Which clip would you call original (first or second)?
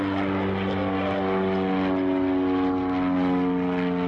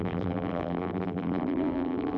first